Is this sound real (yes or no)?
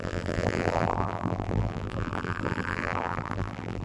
no